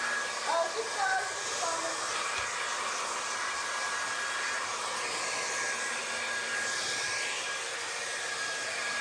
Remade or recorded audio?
recorded